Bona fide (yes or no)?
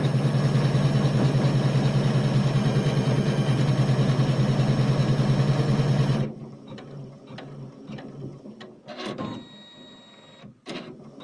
yes